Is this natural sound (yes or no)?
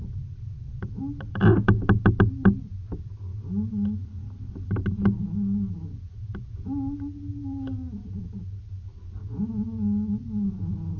yes